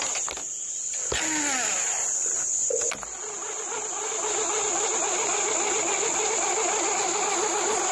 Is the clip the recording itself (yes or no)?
yes